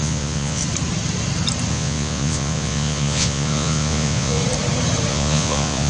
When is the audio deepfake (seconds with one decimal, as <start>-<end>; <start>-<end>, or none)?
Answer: 0.0-0.6; 1.7-4.4; 5.1-5.9